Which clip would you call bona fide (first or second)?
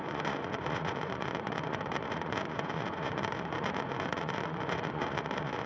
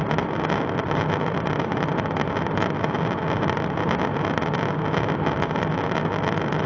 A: second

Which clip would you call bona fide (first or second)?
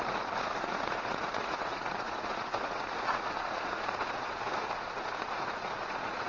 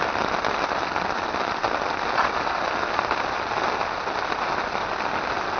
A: second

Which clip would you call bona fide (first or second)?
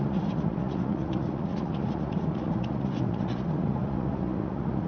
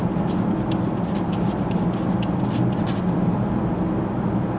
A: second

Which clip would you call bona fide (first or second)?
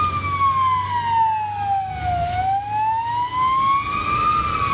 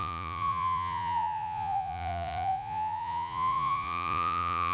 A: first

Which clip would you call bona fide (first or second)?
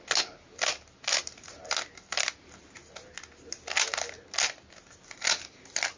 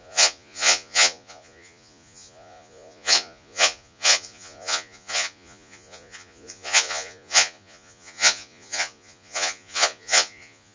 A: first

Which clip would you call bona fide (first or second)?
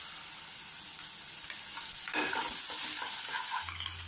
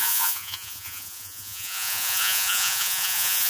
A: first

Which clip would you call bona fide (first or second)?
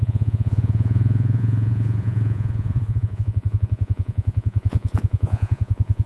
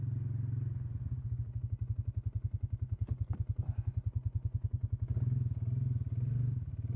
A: second